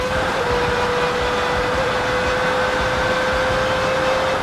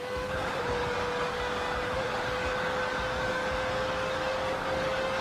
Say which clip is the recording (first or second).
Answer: first